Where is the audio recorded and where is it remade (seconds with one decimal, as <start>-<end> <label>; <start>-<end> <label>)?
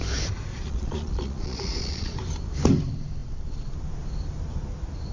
0.0-0.5 recorded; 0.5-2.1 remade; 2.1-5.1 recorded